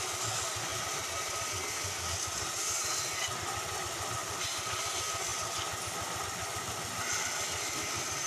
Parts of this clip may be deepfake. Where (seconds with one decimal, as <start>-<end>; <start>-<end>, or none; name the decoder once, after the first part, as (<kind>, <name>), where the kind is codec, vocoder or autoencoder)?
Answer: 4.2-4.8 (vocoder, BigVGAN v2)